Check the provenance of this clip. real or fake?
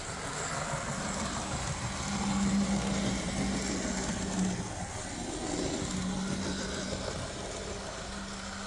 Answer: real